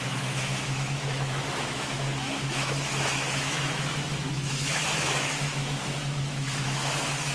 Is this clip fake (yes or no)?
yes